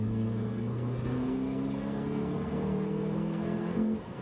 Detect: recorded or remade remade